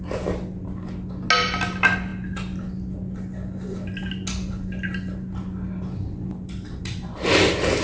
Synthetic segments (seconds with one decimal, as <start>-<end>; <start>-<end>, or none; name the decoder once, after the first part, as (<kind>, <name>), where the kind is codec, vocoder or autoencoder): none